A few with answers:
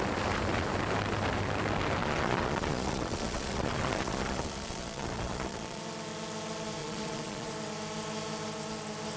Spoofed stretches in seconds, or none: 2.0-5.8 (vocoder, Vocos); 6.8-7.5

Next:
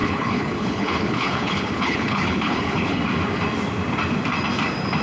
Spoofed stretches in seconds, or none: 0.0-3.0 (codec, HILCodec)

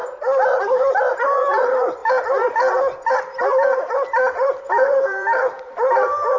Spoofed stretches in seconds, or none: 0.6-2.0 (vocoder, BigVGAN v2); 3.1-6.4

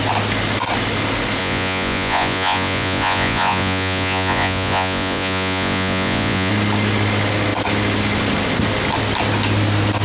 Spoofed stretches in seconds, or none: 1.4-6.5 (vocoder, Vocos)

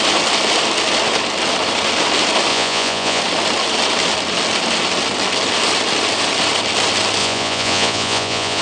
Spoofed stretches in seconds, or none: 2.5-3.2 (vocoder, Vocos); 7.2-8.6